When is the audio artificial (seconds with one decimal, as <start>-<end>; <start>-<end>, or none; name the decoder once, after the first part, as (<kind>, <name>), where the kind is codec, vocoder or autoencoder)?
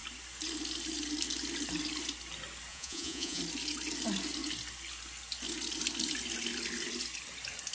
2.7-3.4 (vocoder, Vocos)